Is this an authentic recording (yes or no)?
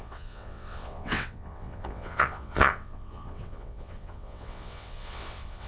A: no